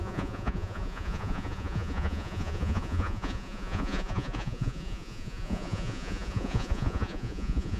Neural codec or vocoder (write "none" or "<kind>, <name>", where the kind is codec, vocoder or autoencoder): vocoder, Vocos